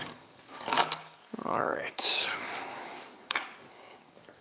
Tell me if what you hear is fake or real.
fake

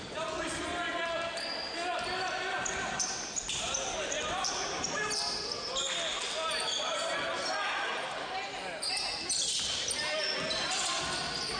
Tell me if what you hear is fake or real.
real